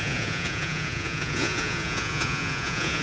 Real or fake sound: fake